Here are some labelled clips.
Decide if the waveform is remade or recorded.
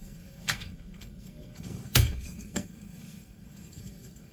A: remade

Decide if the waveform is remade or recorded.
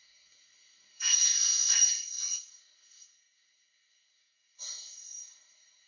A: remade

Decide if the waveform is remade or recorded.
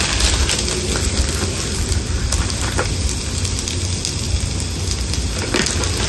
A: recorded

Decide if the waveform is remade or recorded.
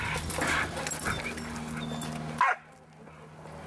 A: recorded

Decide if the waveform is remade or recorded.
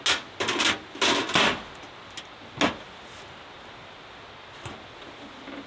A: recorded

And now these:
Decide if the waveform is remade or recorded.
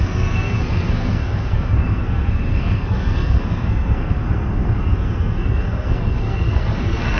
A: remade